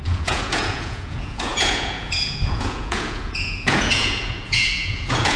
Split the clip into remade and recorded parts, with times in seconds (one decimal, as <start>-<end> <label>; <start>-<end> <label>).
0.0-5.4 remade